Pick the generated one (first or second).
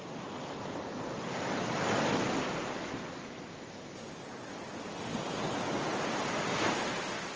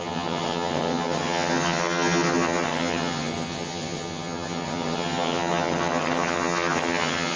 second